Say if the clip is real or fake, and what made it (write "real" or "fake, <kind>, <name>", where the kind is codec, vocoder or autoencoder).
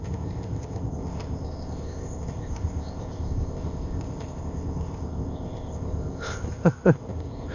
fake, codec, ZipCodec